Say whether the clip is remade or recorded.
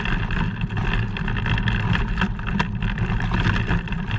recorded